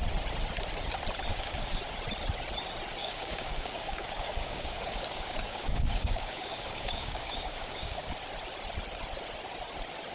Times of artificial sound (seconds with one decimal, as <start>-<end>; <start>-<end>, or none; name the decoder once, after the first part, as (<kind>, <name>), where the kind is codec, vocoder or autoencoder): 1.3-1.8 (codec, DAC); 3.0-8.1